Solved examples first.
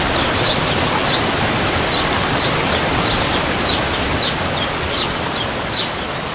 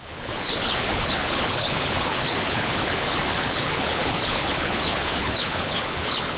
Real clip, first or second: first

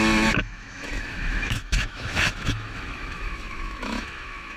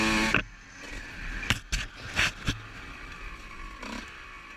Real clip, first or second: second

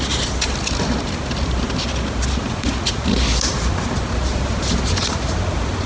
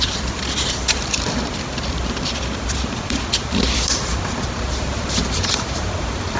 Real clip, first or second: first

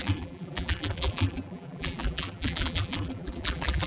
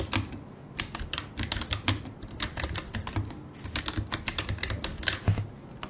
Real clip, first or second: second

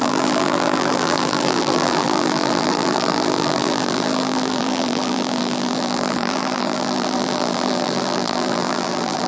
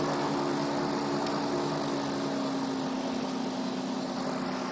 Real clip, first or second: second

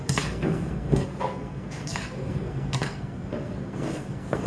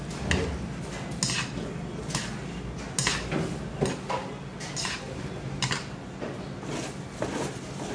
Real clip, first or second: second